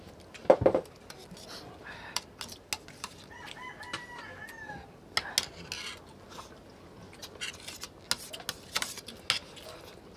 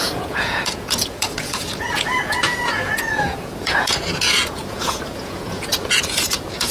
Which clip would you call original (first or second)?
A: first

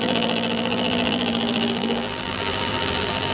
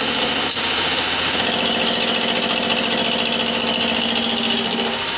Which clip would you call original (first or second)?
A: second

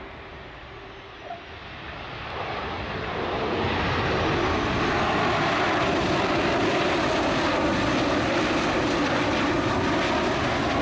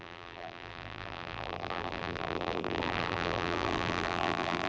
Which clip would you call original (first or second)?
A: first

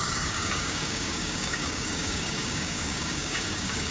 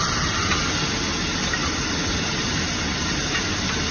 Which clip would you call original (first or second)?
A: second